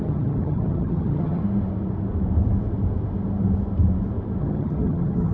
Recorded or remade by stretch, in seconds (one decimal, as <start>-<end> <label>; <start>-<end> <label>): 0.0-1.4 remade; 1.4-4.4 recorded; 4.4-5.3 remade